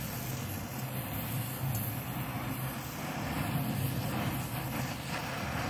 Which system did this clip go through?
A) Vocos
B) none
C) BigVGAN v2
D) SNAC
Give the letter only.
B